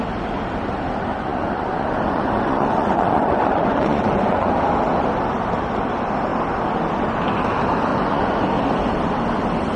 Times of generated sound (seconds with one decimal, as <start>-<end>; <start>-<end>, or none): 1.1-4.5; 7.9-8.4